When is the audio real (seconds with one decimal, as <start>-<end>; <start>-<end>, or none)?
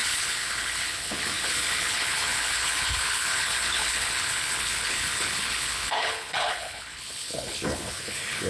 none